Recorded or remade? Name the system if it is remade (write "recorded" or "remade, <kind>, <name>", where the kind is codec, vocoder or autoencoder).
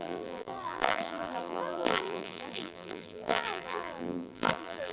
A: remade, vocoder, BigVGAN v2